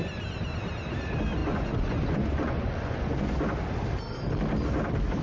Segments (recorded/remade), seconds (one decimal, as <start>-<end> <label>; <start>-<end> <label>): 0.0-1.4 recorded; 1.4-3.4 remade; 3.4-5.2 recorded